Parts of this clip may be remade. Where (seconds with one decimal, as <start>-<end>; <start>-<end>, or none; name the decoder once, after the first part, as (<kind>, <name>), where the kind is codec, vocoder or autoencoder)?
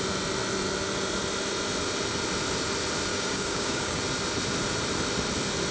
3.1-4.0 (codec, DAC)